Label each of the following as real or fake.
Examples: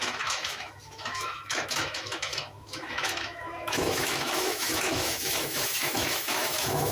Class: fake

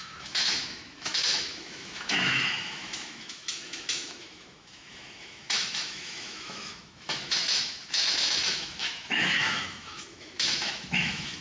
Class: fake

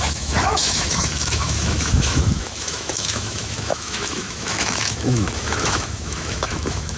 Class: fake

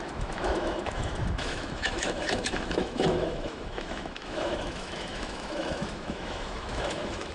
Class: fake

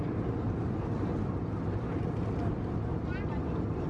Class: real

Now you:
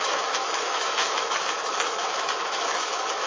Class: fake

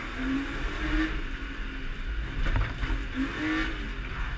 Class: real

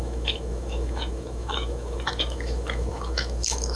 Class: fake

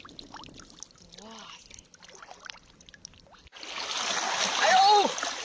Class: real